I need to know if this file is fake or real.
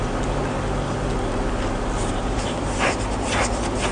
real